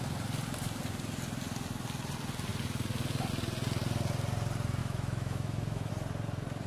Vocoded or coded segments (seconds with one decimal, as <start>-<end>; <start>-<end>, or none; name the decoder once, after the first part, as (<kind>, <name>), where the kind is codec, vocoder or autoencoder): 4.8-5.9 (autoencoder, DAC-VAE)